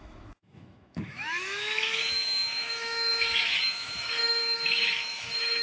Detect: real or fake fake